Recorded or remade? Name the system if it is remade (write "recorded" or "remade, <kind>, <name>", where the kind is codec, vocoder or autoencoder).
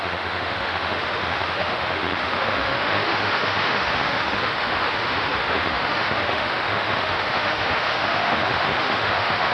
remade, autoencoder, DAC-VAE